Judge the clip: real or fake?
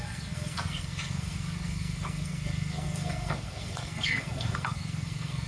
fake